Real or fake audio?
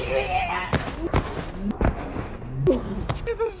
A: real